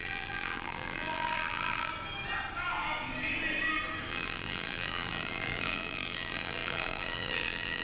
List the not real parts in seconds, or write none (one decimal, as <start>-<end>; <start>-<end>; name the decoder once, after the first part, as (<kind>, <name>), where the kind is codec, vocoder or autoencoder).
0.0-1.9 (vocoder, BigVGAN v2); 4.1-7.8